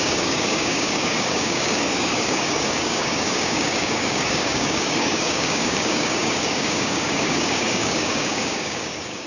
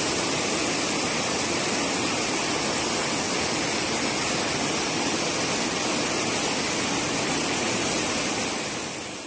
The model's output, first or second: first